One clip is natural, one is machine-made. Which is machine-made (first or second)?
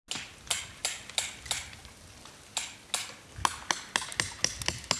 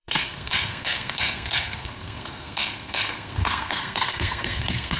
second